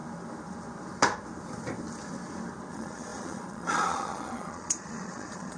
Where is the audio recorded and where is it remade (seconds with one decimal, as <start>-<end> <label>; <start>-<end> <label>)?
0.0-2.7 recorded; 2.7-5.6 remade